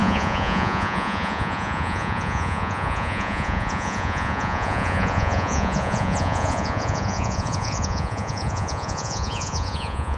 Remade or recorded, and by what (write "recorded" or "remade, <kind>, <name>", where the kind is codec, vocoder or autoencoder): remade, vocoder, Vocos